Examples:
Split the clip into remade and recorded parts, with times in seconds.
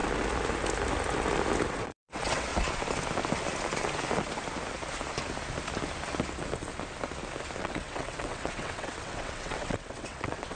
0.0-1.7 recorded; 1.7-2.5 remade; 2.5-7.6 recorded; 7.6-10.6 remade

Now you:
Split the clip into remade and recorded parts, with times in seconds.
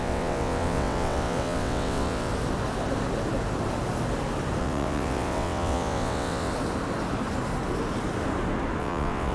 0.0-2.3 remade; 2.3-4.6 recorded; 4.6-6.5 remade; 6.5-8.8 recorded; 8.8-9.3 remade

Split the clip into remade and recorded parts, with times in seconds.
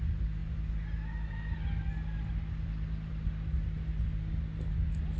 0.0-5.2 recorded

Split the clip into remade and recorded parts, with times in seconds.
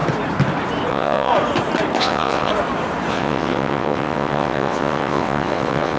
0.0-0.9 recorded; 0.9-1.3 remade; 1.3-2.0 recorded; 2.0-2.5 remade; 2.5-3.1 recorded; 3.1-6.0 remade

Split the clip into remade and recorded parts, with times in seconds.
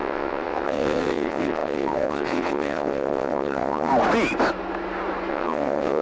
0.0-3.9 remade; 3.9-5.3 recorded; 5.3-6.0 remade